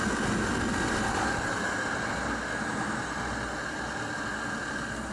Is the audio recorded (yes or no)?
yes